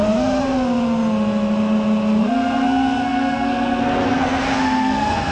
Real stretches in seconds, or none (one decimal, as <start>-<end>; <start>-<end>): 0.0-2.2

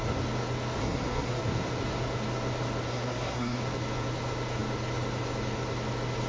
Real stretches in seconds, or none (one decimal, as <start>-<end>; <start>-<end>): 0.0-0.8; 1.4-2.9; 3.6-6.3